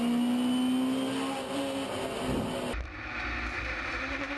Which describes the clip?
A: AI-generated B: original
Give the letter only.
B